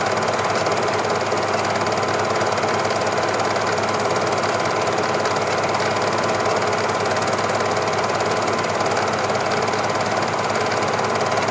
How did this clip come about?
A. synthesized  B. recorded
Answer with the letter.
B